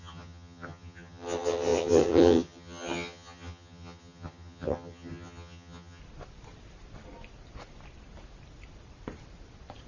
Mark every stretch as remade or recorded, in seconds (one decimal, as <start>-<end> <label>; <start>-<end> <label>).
0.0-6.0 remade; 6.0-9.9 recorded